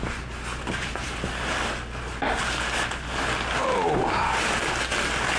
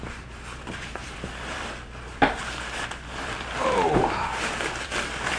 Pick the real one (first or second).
first